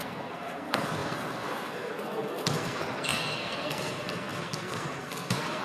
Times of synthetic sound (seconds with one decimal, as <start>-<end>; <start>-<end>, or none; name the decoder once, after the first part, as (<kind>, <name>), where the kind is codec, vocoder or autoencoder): 0.0-5.6 (codec, SNAC)